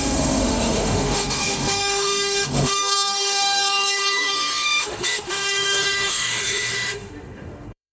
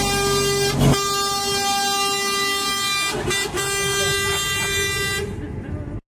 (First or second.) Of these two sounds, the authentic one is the second